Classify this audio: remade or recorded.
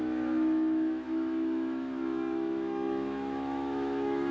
remade